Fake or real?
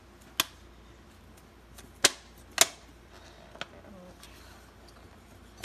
real